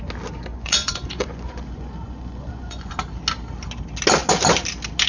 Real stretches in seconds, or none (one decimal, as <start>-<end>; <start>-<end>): 0.0-0.5; 2.9-5.1